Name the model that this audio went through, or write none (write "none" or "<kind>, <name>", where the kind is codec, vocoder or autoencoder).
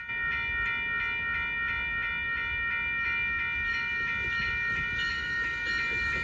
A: none